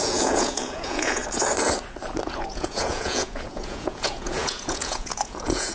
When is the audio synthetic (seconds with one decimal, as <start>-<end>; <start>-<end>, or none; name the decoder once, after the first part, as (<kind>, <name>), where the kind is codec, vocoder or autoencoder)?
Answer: 0.0-1.2 (vocoder, Vocos); 2.4-5.7